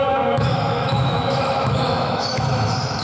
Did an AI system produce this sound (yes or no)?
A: yes